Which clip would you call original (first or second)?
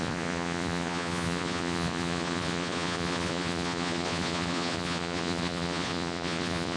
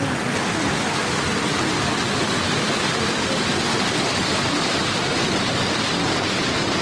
second